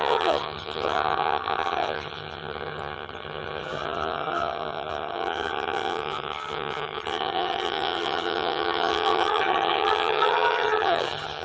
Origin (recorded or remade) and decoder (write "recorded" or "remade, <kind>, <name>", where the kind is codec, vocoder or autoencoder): remade, vocoder, HiFi-GAN